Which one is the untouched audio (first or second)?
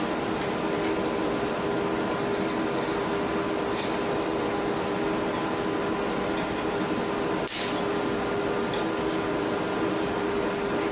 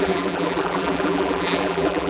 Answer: first